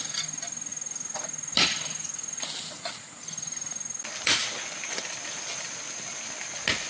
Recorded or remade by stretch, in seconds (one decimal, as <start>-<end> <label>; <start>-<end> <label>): 0.0-6.9 recorded